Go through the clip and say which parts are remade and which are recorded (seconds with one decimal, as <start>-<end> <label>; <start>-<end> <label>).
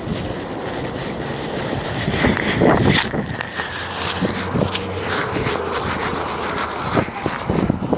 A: 0.0-8.0 recorded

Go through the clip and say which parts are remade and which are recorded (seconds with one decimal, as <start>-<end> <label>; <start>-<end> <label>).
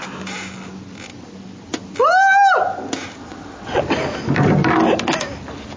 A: 0.0-3.2 recorded; 3.2-3.8 remade; 3.8-5.8 recorded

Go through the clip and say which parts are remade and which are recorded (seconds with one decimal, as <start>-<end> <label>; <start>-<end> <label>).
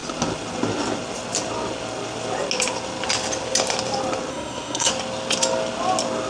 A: 0.0-4.3 recorded; 4.3-4.9 remade; 4.9-6.3 recorded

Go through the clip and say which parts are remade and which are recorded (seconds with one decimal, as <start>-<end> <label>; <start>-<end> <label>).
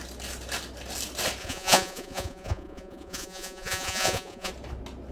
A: 0.0-1.4 recorded; 1.4-4.5 remade; 4.5-5.1 recorded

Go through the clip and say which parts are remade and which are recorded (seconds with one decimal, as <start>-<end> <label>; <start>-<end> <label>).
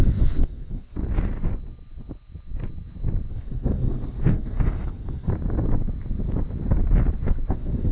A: 0.0-1.0 remade; 1.0-3.3 recorded; 3.3-5.3 remade; 5.3-7.5 recorded; 7.5-7.9 remade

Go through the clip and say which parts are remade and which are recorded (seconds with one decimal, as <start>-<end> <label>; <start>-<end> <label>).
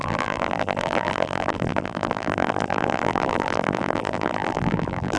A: 0.0-5.2 remade